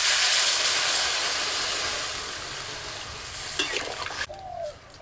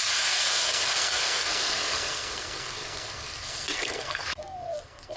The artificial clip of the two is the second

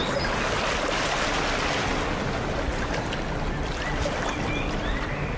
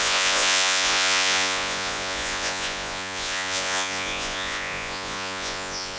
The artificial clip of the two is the second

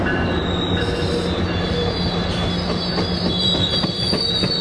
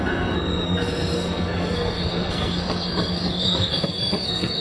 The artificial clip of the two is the second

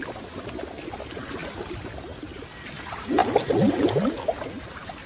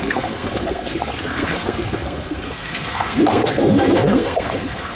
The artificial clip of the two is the second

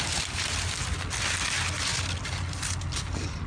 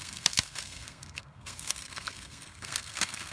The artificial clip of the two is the second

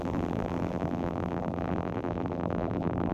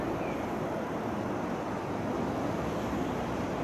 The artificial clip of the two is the first